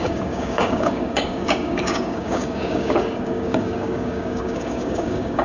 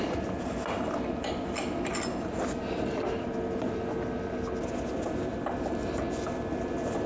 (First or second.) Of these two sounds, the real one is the second